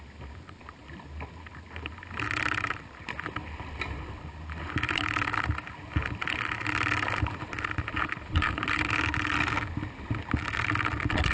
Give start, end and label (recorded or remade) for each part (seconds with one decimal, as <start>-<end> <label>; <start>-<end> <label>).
0.0-11.3 recorded